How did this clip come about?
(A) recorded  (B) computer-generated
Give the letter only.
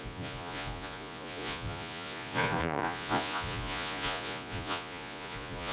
B